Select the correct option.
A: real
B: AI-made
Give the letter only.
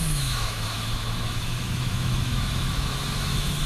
B